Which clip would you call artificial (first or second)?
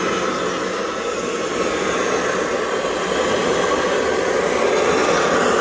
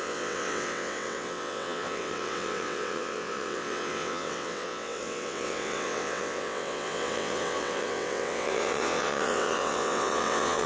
second